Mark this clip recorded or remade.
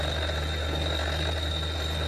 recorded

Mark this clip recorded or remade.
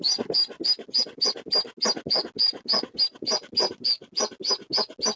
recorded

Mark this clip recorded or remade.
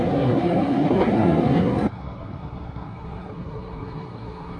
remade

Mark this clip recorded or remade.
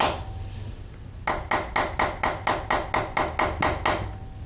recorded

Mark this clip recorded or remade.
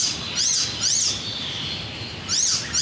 recorded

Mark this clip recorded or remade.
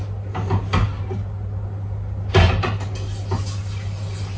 recorded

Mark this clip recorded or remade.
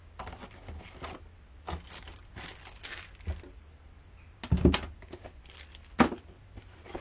recorded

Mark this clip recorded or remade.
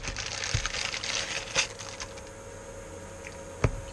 recorded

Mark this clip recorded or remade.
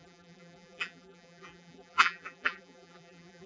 remade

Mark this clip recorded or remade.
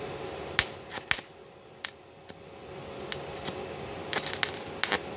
recorded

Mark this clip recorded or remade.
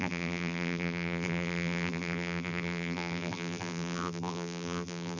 remade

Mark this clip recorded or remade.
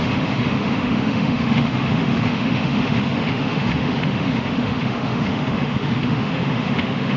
remade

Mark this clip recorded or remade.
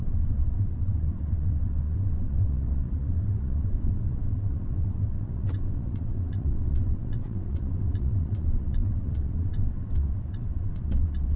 remade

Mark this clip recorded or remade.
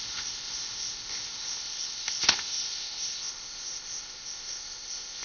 remade